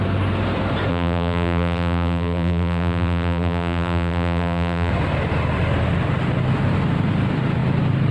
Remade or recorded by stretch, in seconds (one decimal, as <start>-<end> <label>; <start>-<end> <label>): 0.0-0.9 recorded; 0.9-4.9 remade; 4.9-8.1 recorded